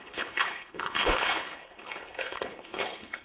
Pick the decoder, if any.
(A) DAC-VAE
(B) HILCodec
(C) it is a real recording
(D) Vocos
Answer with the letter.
B